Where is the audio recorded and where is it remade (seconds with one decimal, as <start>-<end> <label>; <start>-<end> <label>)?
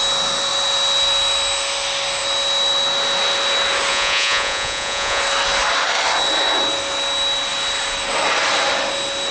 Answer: 0.0-3.9 recorded; 3.9-5.2 remade; 5.2-9.3 recorded